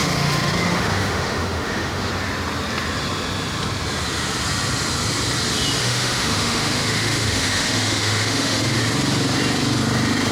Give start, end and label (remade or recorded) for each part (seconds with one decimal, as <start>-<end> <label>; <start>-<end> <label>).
0.0-2.1 remade; 2.1-5.8 recorded; 5.8-8.8 remade; 8.8-10.3 recorded